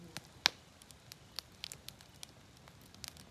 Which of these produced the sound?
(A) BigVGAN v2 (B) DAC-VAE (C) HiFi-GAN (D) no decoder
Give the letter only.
D